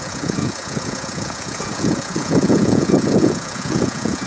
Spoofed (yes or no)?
yes